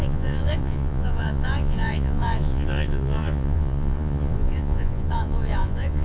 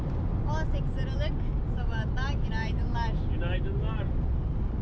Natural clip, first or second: second